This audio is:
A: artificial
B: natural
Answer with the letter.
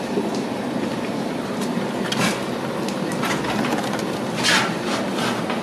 B